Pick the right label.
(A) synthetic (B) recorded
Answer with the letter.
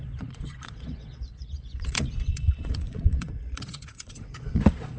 A